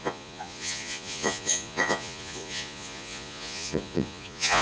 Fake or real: fake